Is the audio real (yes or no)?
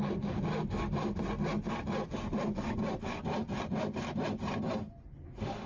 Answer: yes